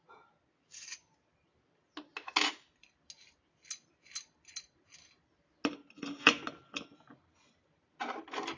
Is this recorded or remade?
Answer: recorded